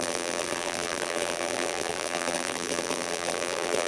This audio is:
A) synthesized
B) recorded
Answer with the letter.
A